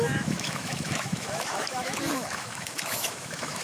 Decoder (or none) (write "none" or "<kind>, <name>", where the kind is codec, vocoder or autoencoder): autoencoder, DAC-VAE